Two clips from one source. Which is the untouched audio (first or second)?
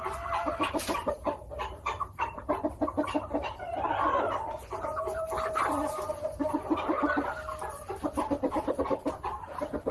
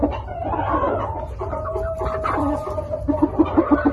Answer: second